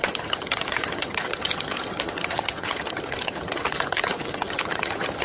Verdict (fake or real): fake